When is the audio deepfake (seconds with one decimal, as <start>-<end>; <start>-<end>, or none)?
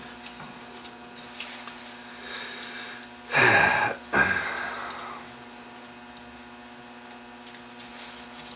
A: none